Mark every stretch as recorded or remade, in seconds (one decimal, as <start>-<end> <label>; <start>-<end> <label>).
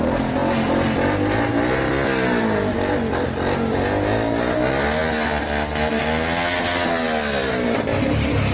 0.0-8.5 recorded